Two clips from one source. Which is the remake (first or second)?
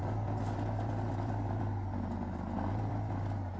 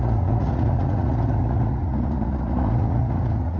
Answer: second